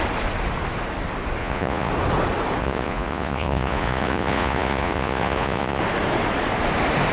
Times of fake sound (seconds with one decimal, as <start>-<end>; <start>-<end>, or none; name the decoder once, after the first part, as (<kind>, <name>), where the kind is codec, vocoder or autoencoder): 1.4-1.9 (vocoder, Vocos); 2.6-5.8